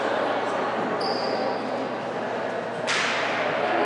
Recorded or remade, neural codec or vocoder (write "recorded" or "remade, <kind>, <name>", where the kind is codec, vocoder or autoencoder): recorded